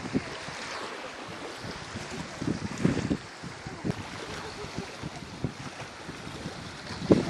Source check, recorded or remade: recorded